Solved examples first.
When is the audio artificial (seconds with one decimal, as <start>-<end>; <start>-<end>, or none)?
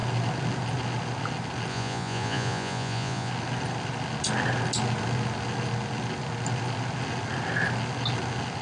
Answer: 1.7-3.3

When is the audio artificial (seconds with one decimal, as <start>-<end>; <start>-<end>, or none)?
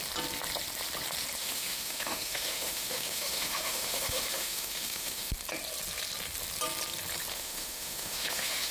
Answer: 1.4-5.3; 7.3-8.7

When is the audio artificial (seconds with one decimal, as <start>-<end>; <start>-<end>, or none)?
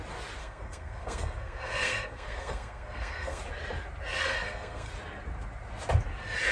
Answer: 0.4-3.4; 4.2-4.9